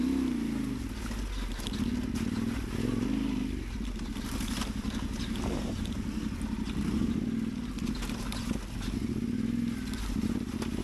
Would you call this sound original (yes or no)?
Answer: yes